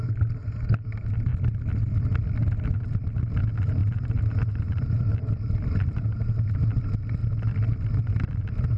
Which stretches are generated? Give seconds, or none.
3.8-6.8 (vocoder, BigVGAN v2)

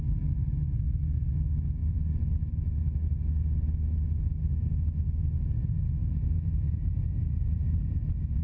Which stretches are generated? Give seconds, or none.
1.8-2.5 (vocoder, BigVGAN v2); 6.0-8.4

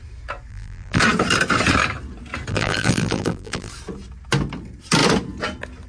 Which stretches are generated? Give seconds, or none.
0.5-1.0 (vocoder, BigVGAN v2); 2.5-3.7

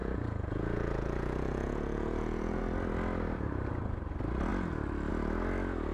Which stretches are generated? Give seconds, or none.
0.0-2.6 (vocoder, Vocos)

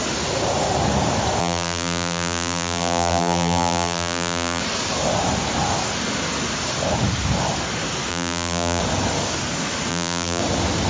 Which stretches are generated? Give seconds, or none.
1.4-4.6 (vocoder, BigVGAN v2); 8.1-8.8; 9.9-10.4

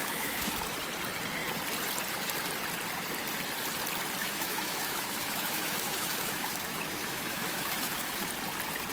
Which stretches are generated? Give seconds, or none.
0.0-0.5 (autoencoder, DAC-VAE); 4.2-8.3

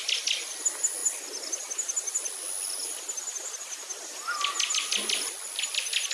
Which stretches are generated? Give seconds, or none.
none